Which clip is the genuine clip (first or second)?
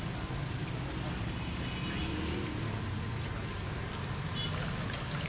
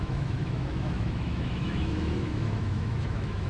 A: first